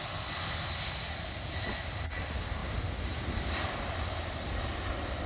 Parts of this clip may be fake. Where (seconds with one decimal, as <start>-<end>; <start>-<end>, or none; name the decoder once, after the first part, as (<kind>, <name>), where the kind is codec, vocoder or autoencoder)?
none